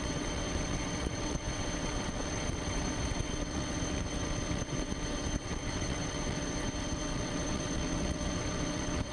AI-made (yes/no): yes